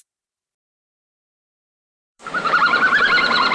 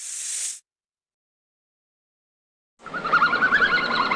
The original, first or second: second